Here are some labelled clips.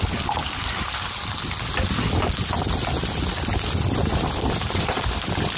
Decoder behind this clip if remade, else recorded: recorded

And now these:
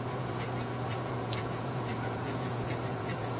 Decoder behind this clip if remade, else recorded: remade, vocoder, Vocos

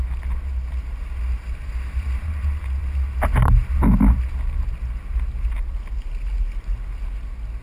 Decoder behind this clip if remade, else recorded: recorded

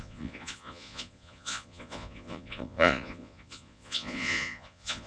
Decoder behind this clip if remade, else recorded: remade, vocoder, Vocos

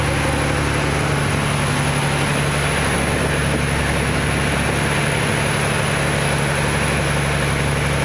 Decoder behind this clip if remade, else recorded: recorded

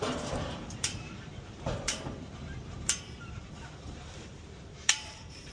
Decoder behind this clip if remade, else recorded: remade, vocoder, BigVGAN v2